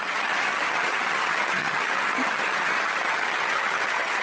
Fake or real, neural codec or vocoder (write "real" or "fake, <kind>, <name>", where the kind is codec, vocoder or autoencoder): fake, vocoder, HiFi-GAN